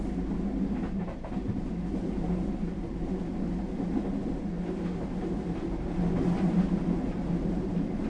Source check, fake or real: real